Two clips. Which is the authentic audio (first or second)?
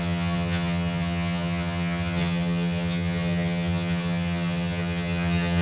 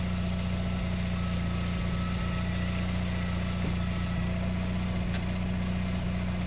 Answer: second